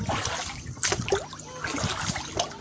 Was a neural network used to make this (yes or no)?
no